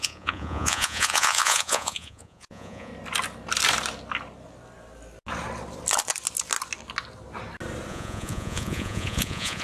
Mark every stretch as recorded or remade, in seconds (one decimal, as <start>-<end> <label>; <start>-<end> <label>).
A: 0.0-2.9 remade; 2.9-7.9 recorded; 7.9-9.6 remade